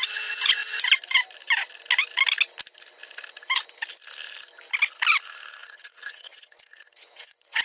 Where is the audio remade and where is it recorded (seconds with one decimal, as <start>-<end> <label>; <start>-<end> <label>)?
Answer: 0.0-5.6 recorded; 5.6-7.6 remade